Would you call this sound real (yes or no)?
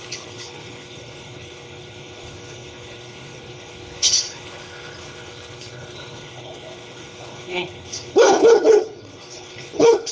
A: no